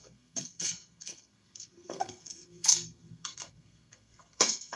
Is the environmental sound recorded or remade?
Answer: remade